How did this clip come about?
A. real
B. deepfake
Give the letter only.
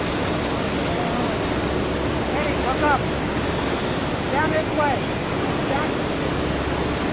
A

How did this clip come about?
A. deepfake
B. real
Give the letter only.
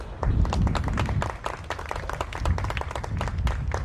B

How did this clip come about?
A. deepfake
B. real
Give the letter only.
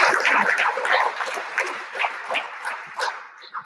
A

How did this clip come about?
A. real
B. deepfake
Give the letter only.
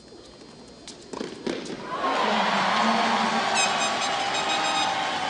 A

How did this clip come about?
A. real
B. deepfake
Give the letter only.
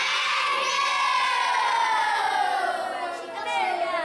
A